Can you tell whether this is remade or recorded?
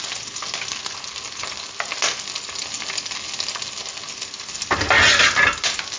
recorded